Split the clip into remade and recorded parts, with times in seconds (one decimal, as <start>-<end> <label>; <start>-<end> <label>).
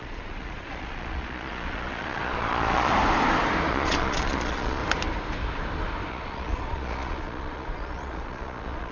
0.0-2.9 remade; 2.9-3.7 recorded; 3.7-4.8 remade; 4.8-6.1 recorded; 6.1-8.9 remade